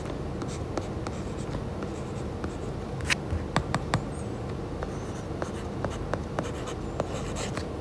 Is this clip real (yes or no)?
yes